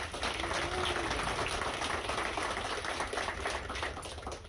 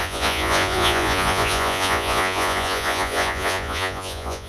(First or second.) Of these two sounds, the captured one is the first